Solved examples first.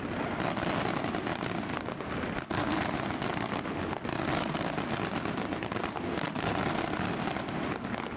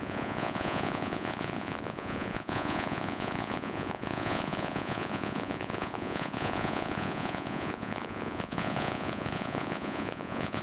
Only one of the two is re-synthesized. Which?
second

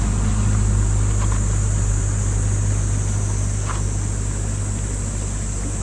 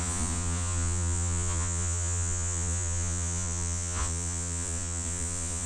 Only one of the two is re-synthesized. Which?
second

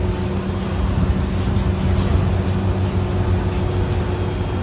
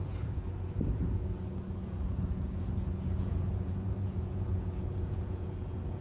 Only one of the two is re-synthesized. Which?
second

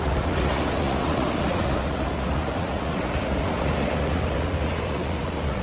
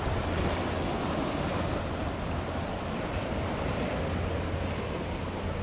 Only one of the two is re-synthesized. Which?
first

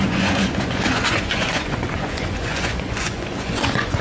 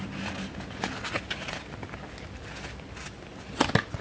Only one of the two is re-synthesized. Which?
first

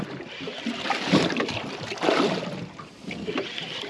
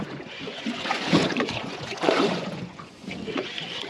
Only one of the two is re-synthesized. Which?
second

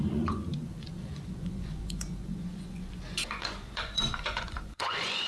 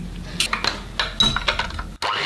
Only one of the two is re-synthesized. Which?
first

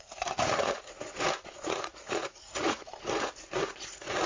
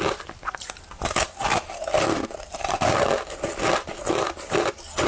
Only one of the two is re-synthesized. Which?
first